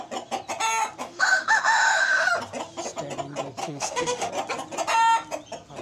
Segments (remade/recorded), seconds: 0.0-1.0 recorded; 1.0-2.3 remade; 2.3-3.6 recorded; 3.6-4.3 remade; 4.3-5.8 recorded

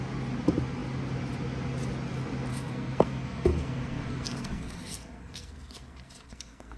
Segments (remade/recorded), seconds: 0.0-2.5 recorded; 2.5-6.8 remade